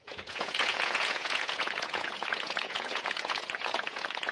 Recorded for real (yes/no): no